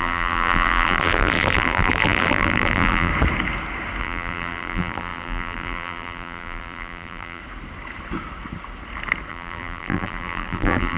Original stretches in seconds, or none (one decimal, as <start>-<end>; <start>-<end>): 3.1-4.0; 7.4-9.3